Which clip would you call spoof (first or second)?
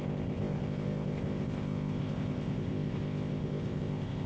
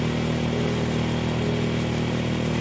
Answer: first